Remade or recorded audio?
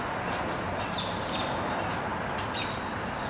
recorded